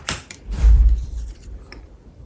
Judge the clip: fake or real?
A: fake